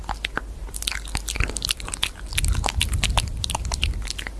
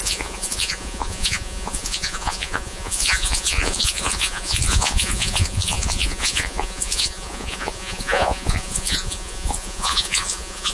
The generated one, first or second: second